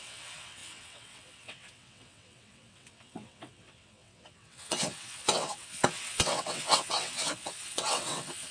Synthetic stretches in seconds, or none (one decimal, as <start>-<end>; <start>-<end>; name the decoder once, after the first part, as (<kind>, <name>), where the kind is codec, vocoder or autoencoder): 0.0-8.5 (vocoder, WaveNeXt)